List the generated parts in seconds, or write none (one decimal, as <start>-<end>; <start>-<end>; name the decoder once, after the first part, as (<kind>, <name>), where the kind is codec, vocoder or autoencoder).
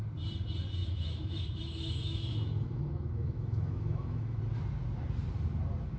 0.8-4.4 (autoencoder, DAC-VAE)